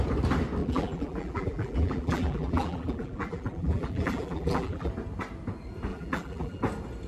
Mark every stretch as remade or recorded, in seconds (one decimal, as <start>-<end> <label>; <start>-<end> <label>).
0.0-0.6 recorded; 0.6-4.9 remade; 4.9-5.9 recorded; 5.9-6.6 remade; 6.6-7.1 recorded